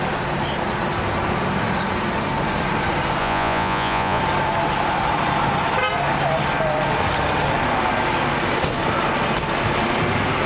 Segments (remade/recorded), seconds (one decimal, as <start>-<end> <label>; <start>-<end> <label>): 0.0-3.2 recorded; 3.2-4.2 remade; 4.2-10.5 recorded